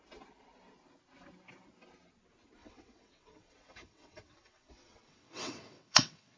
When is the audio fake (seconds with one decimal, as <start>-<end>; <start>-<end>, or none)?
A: 2.6-6.4